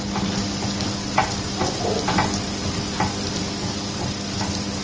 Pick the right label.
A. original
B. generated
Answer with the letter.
A